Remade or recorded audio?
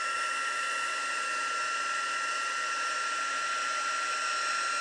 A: recorded